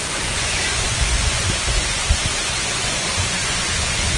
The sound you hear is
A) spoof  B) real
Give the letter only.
A